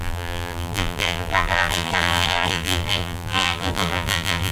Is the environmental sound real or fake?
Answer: fake